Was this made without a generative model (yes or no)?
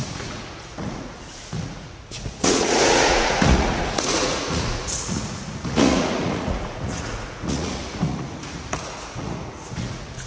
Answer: no